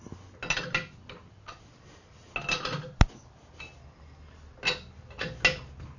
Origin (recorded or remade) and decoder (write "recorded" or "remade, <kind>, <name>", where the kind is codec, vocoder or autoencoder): recorded